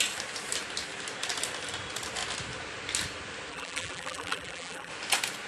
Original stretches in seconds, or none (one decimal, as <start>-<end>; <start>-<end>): 0.0-3.5; 4.9-5.5